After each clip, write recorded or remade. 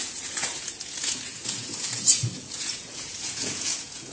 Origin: remade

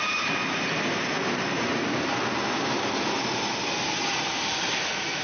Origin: remade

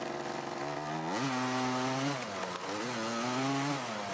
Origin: recorded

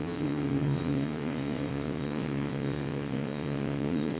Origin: remade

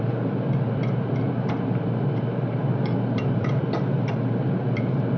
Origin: remade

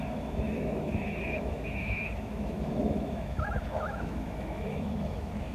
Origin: remade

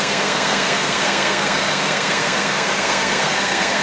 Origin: remade